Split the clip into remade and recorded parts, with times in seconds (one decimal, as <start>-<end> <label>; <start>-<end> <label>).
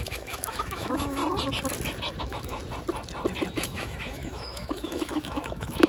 0.0-1.2 remade; 1.2-2.2 recorded; 2.2-2.6 remade; 2.6-3.5 recorded; 3.5-5.9 remade